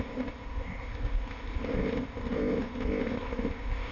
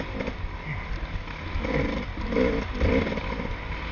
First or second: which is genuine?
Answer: second